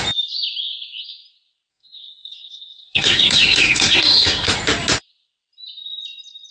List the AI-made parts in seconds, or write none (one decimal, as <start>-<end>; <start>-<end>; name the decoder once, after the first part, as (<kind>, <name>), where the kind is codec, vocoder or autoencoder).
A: 1.7-4.5 (codec, SNAC)